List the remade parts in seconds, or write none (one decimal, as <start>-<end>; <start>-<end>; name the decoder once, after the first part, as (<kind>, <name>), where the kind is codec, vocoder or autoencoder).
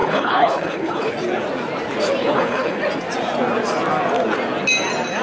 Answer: 0.0-1.1 (codec, HILCodec); 2.2-2.8